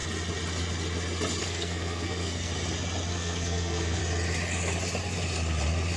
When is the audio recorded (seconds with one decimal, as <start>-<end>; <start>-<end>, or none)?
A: 0.0-1.4; 2.5-3.1; 4.0-6.0